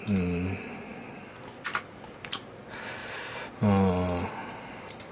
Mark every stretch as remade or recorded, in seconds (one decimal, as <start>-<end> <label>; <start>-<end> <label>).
0.0-5.1 recorded